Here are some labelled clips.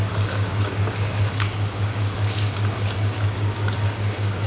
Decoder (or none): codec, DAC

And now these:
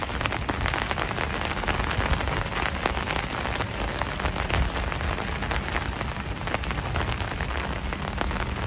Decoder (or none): none